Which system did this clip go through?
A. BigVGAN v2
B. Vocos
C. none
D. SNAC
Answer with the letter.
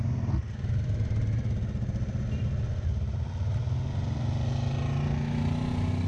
C